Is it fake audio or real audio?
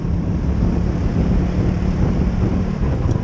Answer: real